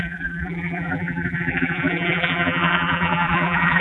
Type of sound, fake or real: fake